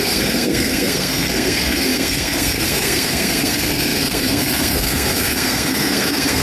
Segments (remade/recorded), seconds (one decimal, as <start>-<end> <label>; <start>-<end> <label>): 0.0-6.4 remade